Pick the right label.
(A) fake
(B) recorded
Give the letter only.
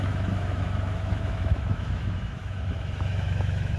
A